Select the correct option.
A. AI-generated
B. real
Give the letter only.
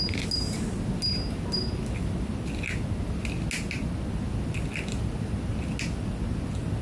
B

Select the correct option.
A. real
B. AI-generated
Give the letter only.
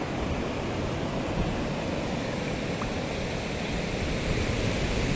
A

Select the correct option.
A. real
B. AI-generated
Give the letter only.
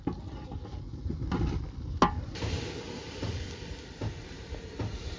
A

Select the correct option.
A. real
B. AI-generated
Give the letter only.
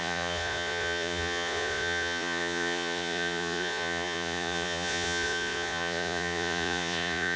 B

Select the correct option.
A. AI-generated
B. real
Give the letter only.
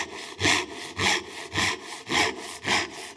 B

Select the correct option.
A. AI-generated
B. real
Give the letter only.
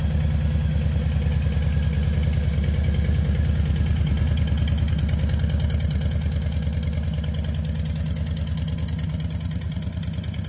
B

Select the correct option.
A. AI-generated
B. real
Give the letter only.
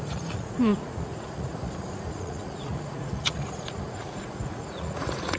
A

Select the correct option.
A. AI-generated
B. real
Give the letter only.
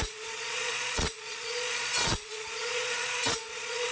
A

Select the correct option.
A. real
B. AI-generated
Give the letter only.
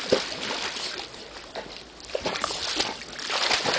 A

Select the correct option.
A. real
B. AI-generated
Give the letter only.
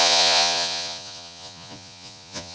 B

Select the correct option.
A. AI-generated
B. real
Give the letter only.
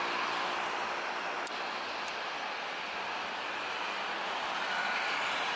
B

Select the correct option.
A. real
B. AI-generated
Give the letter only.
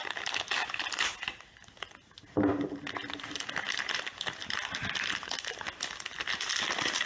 A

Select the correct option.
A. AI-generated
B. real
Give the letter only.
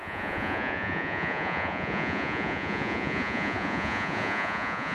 A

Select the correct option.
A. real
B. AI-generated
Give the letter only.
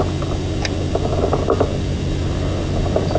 A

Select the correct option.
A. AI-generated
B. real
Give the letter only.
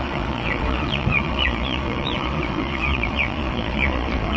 A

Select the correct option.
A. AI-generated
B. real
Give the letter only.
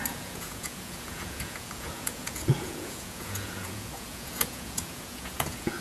A